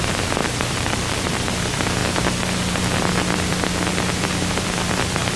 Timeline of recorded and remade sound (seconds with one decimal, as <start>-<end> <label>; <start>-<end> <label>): 0.0-0.4 recorded; 0.4-1.4 remade; 1.4-5.4 recorded